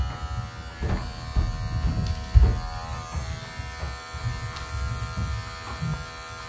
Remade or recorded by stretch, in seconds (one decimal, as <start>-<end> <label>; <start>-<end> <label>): 0.0-6.5 recorded